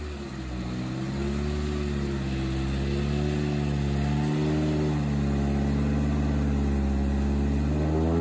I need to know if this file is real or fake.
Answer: real